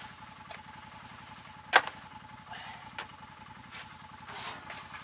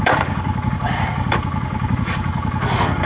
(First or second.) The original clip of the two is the first